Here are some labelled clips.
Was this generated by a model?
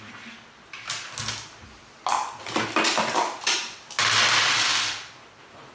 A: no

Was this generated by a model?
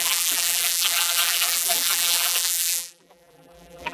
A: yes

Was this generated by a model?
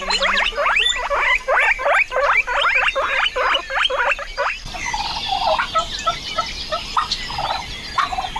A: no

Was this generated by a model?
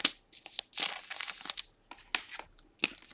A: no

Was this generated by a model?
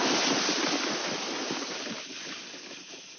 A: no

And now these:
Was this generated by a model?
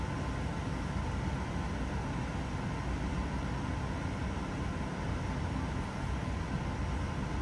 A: no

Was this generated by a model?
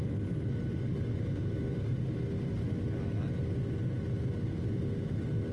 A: no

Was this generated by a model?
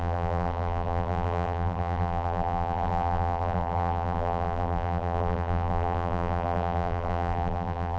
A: yes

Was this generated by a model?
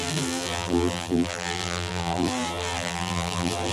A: yes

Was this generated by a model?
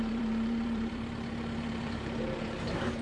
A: yes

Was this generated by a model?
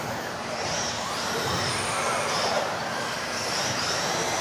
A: yes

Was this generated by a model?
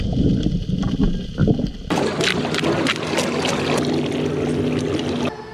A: no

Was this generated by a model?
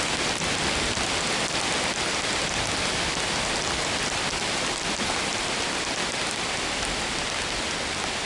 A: no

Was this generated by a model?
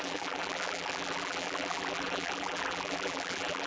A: yes